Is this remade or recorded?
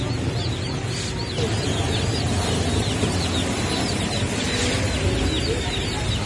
recorded